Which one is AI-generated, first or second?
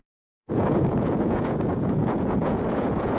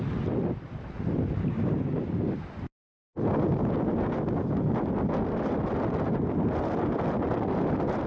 first